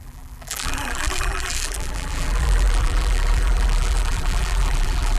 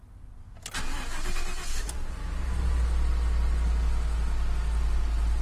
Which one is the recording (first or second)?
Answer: second